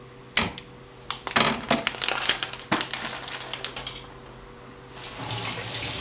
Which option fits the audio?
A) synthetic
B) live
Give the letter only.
B